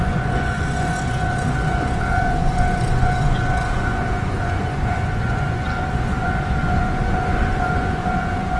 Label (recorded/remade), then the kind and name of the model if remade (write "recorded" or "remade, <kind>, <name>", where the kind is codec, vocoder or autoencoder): remade, vocoder, Vocos